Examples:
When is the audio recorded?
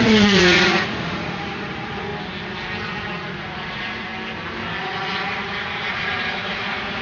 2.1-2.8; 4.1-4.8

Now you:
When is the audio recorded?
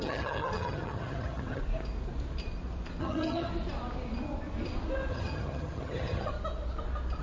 1.6-3.0; 3.5-5.1; 6.3-7.2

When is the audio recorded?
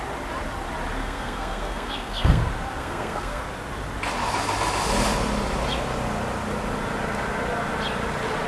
0.0-1.0; 2.4-2.8; 3.4-8.5